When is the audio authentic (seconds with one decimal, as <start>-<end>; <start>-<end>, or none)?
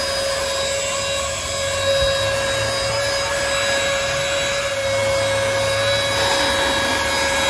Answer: 0.0-7.5